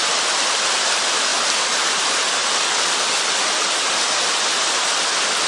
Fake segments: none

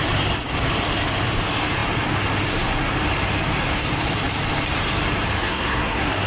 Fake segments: 5.4-6.3

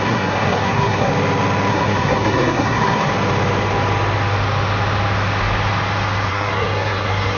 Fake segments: 0.0-1.1; 1.7-3.1; 6.3-7.4